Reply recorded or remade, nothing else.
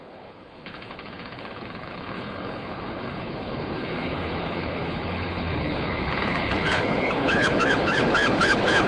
remade